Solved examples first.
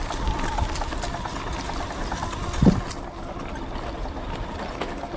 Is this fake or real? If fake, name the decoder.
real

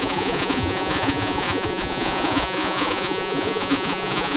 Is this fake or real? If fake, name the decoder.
fake, vocoder, Vocos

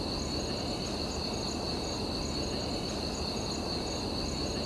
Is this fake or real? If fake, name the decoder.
real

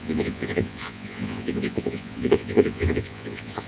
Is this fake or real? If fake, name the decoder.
fake, vocoder, Vocos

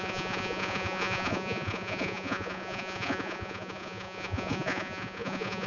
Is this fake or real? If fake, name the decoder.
fake, vocoder, Vocos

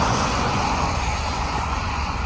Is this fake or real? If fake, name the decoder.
fake, vocoder, Vocos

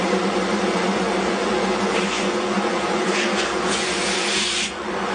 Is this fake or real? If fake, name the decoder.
fake, vocoder, Vocos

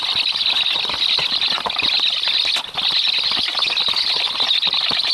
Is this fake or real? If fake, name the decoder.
real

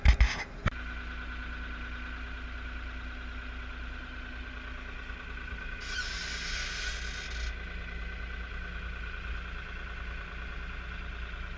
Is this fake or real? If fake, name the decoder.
real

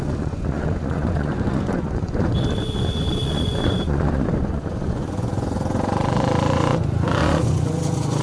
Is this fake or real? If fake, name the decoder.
fake, vocoder, Vocos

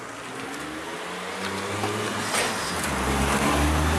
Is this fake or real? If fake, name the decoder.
real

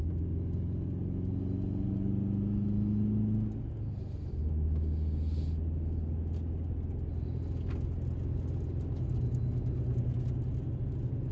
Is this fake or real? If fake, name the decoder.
real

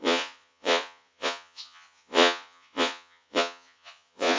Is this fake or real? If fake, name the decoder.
fake, vocoder, Vocos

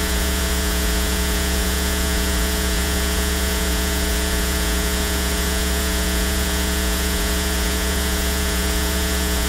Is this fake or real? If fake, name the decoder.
fake, vocoder, Vocos